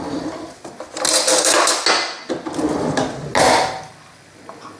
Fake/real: real